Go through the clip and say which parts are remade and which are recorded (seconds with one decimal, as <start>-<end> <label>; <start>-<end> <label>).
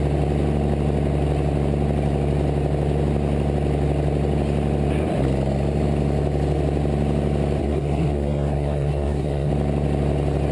0.0-7.6 recorded; 7.6-9.5 remade; 9.5-10.5 recorded